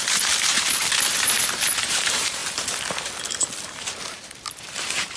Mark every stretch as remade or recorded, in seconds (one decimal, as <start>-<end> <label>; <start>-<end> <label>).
0.0-2.4 remade; 2.4-4.6 recorded; 4.6-5.2 remade